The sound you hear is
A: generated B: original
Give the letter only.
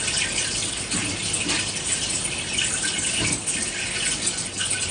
B